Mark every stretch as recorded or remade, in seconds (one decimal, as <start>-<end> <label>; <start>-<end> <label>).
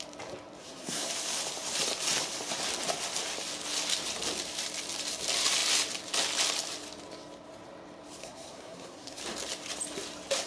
0.0-0.6 recorded; 0.6-1.1 remade; 1.1-8.2 recorded; 8.2-9.2 remade; 9.2-10.5 recorded